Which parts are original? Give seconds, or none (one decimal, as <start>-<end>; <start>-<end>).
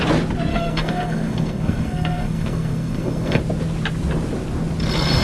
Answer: 0.0-0.5; 3.4-5.2